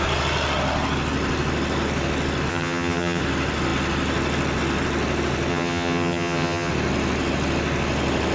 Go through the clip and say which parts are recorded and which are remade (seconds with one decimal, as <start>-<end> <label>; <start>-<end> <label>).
0.0-2.5 recorded; 2.5-3.2 remade; 3.2-5.5 recorded; 5.5-6.7 remade; 6.7-8.3 recorded